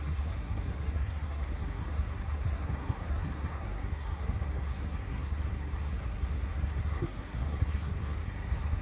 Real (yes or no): no